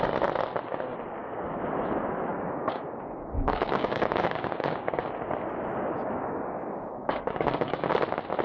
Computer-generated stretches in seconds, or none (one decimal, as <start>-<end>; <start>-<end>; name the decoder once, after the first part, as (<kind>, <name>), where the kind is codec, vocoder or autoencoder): 1.2-1.7 (codec, DAC); 2.3-4.9; 5.7-7.9